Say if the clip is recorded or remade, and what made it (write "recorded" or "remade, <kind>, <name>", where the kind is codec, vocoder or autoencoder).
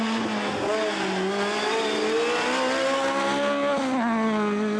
recorded